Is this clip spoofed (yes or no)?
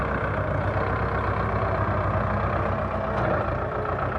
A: no